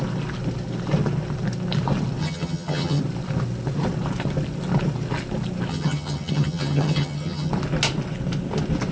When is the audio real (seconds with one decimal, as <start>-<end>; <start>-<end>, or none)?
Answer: 0.0-2.2; 3.0-5.7; 7.5-8.9